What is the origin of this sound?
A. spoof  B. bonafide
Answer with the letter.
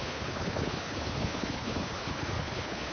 A